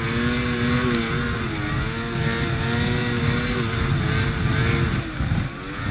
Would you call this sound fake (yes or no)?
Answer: no